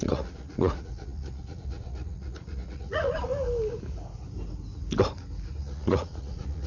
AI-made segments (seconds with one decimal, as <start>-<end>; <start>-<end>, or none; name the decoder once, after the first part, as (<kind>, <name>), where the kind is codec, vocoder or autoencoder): 0.0-3.3 (vocoder, Vocos); 5.6-6.7